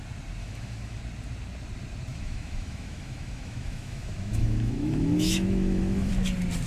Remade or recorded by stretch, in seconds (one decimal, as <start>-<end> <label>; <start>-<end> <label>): 0.0-0.4 recorded; 0.4-1.0 remade; 1.0-2.1 recorded; 2.1-6.1 remade; 6.1-6.7 recorded